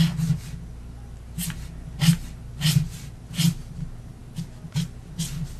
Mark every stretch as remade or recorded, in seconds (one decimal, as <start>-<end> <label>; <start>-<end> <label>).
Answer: 0.0-5.6 recorded